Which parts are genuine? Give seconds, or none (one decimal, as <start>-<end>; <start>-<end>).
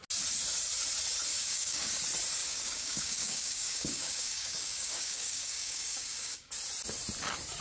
0.0-1.3; 2.0-2.4; 6.5-7.6